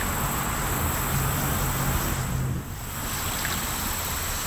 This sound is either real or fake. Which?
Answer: real